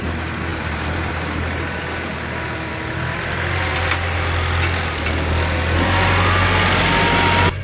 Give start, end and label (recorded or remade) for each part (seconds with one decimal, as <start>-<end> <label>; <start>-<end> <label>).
0.0-0.5 recorded; 0.5-1.1 remade; 1.1-7.6 recorded